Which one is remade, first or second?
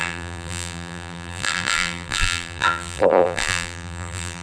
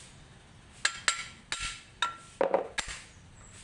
first